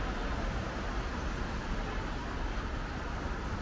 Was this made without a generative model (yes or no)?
yes